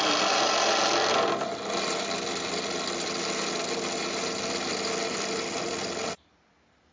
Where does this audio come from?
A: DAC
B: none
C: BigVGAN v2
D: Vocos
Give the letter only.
B